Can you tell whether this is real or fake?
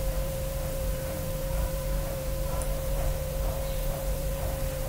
fake